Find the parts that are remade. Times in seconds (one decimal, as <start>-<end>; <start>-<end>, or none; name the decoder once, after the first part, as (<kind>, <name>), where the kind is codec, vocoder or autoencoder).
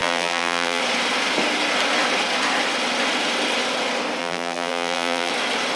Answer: 0.0-0.8 (vocoder, BigVGAN v2); 4.2-5.3